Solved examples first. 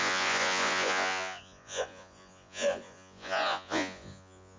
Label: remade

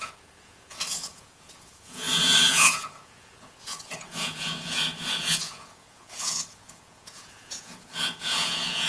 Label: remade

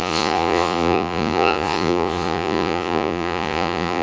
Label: remade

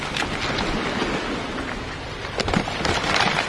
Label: recorded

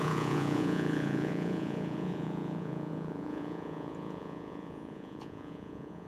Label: remade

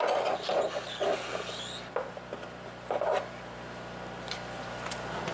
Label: recorded